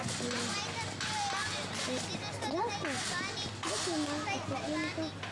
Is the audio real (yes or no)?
yes